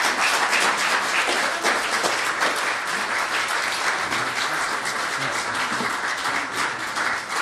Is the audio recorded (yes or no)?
yes